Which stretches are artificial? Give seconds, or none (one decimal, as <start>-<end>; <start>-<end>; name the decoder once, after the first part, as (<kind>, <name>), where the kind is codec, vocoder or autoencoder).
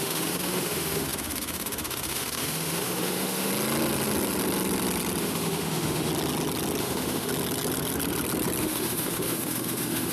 0.0-3.5 (autoencoder, DAC-VAE); 5.2-6.1; 6.8-7.3; 8.6-10.1